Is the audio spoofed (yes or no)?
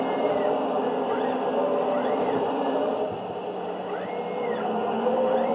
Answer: yes